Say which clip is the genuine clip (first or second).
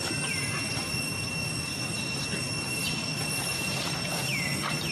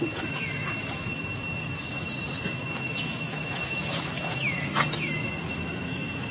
first